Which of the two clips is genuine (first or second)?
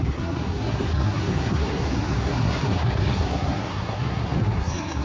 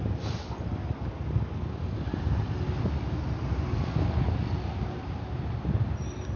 second